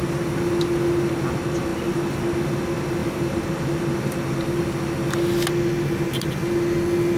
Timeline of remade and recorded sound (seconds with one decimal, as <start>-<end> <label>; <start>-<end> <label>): 0.0-7.2 recorded